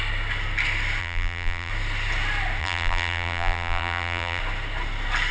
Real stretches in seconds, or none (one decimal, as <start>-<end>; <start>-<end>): 0.0-1.0; 1.7-2.6; 4.4-5.3